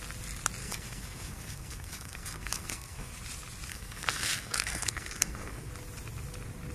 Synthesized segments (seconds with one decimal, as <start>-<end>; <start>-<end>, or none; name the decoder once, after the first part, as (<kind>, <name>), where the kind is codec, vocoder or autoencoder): 0.6-3.1 (codec, SNAC); 3.7-5.7